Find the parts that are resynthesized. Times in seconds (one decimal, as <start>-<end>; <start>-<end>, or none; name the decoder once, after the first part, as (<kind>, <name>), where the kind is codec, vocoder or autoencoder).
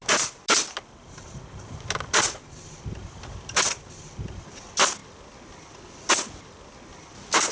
none